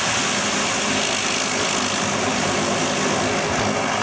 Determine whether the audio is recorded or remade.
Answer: recorded